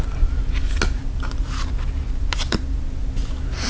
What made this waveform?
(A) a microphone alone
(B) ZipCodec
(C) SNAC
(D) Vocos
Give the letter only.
A